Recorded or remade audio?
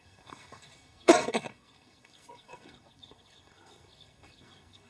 remade